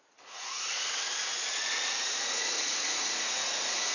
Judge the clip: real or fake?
fake